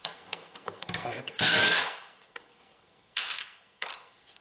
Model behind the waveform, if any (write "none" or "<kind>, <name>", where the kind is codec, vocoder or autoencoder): codec, SNAC